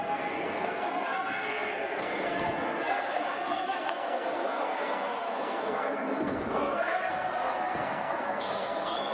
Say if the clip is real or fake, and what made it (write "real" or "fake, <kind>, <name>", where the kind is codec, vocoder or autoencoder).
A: fake, codec, SNAC